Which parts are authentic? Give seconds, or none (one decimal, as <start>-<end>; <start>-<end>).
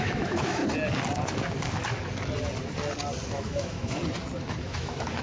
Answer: 0.6-3.3; 4.0-4.6